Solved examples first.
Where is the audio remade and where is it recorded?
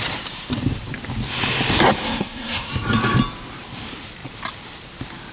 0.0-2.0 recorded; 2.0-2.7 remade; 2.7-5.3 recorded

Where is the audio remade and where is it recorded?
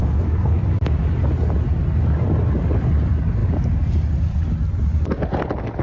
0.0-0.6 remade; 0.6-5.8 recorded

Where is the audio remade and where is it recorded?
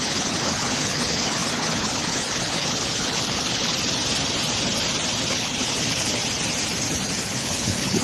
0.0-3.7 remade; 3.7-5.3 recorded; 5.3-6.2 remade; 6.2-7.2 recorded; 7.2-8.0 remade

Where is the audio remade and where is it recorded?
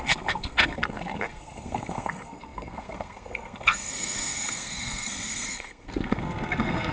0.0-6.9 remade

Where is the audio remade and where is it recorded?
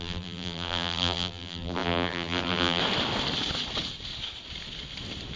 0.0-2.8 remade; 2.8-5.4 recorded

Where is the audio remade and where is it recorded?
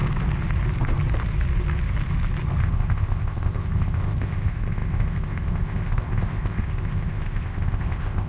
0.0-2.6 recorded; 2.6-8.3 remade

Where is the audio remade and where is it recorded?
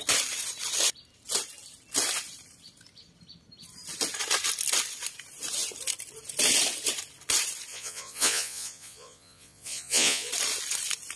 0.0-7.7 recorded; 7.7-10.3 remade; 10.3-11.2 recorded